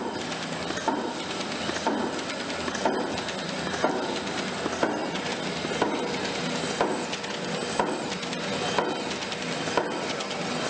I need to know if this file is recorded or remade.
recorded